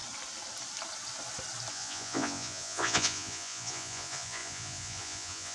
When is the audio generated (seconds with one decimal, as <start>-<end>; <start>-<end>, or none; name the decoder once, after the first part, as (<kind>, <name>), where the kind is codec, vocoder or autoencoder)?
1.7-5.5 (vocoder, Vocos)